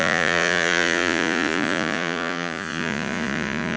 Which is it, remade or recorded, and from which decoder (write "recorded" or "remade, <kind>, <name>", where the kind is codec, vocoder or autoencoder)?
remade, vocoder, Vocos